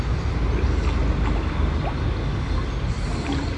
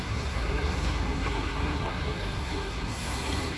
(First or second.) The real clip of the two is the first